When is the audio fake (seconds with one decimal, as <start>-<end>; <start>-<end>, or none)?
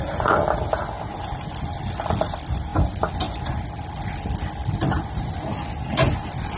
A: none